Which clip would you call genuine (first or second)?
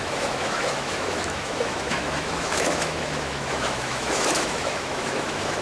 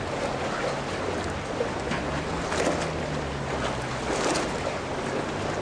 second